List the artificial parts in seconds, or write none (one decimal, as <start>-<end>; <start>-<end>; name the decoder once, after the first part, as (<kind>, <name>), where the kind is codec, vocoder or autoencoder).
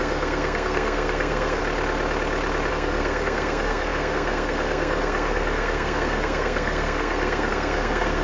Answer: 0.0-1.6 (codec, SNAC); 2.7-8.2